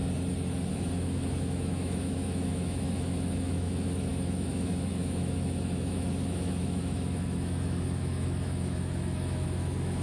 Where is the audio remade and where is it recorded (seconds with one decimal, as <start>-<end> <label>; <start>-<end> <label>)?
0.0-0.7 recorded; 0.7-10.0 remade